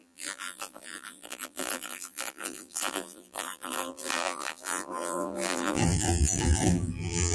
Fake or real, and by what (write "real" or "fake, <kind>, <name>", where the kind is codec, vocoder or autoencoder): fake, vocoder, BigVGAN v2